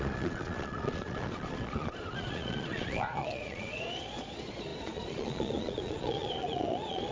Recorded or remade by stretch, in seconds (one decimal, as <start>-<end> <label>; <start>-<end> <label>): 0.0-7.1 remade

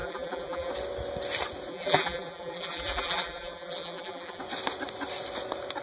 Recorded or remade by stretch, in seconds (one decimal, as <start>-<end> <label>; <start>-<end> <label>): 0.0-0.7 remade; 0.7-1.7 recorded; 1.7-4.4 remade; 4.4-5.8 recorded

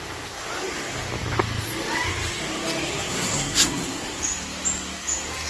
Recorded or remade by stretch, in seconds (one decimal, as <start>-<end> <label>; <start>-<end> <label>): 0.0-2.9 recorded; 2.9-4.2 remade; 4.2-5.5 recorded

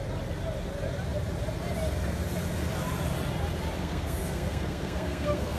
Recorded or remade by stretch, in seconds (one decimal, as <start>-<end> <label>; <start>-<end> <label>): 0.0-3.8 recorded; 3.8-5.6 remade

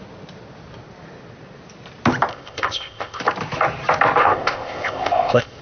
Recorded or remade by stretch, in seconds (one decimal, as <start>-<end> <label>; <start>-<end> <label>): 0.0-2.3 recorded; 2.3-3.2 remade; 3.2-4.2 recorded; 4.2-5.6 remade